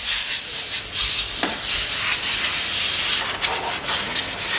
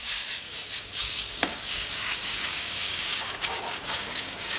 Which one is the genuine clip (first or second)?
first